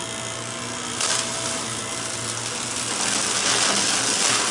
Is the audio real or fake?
real